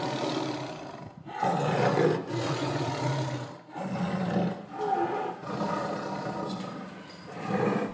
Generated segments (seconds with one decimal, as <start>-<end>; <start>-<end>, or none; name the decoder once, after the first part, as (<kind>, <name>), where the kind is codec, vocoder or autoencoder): 2.2-2.9 (vocoder, Vocos)